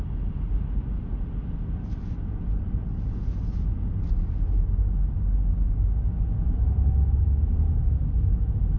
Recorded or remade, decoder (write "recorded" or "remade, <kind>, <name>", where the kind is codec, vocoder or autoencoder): recorded